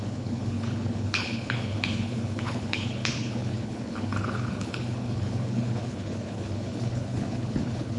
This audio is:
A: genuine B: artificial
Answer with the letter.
B